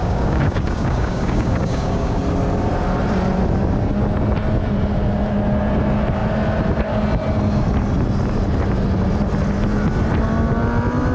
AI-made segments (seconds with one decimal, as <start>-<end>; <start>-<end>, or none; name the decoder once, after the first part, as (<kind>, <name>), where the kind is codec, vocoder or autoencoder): 0.0-2.2 (codec, DAC)